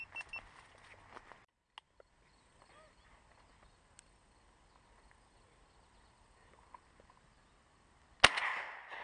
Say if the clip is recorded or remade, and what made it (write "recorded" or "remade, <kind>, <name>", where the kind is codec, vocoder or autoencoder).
recorded